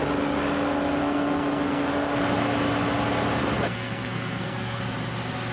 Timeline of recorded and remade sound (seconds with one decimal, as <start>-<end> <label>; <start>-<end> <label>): 0.0-1.0 recorded; 1.0-1.9 remade; 1.9-3.4 recorded; 3.4-4.8 remade; 4.8-5.5 recorded